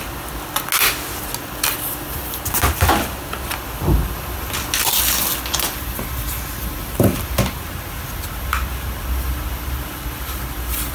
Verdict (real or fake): real